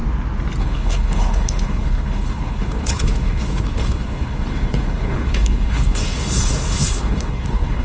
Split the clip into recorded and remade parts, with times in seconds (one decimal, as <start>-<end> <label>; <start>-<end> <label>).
0.0-0.6 recorded; 0.6-7.8 remade

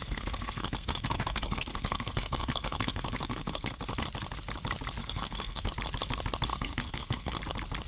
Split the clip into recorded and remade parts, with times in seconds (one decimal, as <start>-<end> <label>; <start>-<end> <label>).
0.0-3.8 remade; 3.8-5.0 recorded; 5.0-5.7 remade; 5.7-6.5 recorded; 6.5-7.4 remade; 7.4-7.9 recorded